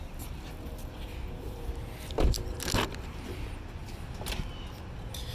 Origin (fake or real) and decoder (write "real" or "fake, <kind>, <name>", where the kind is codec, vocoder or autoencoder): real